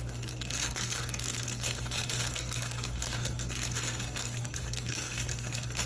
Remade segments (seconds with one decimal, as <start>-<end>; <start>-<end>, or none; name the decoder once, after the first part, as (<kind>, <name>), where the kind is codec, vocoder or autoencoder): 0.0-5.9 (codec, SNAC)

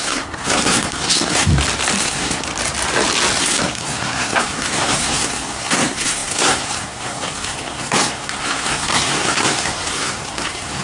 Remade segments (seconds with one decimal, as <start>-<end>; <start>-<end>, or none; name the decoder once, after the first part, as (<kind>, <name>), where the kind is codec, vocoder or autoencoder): 0.0-1.5 (codec, SNAC); 2.0-2.5; 3.4-10.8